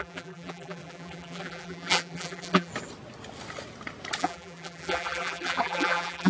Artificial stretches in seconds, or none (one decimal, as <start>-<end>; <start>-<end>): 0.0-2.7; 4.2-6.3